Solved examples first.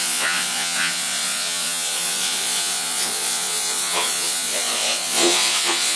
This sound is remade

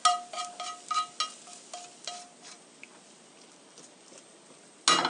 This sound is recorded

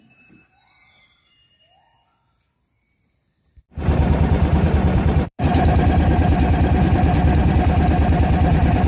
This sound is remade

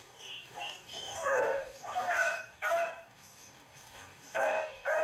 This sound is remade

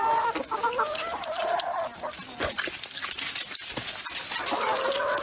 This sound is recorded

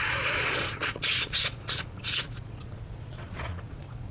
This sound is remade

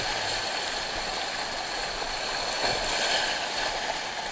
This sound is recorded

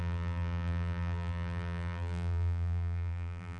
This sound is remade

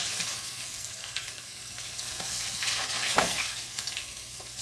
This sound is remade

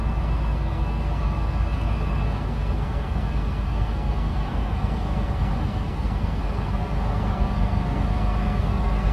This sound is remade